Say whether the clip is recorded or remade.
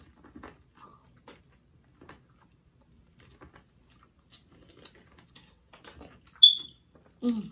recorded